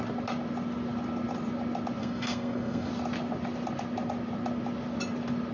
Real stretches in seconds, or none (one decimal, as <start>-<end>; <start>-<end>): 0.0-2.0; 2.9-5.5